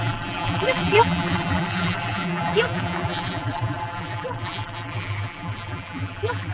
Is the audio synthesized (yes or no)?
yes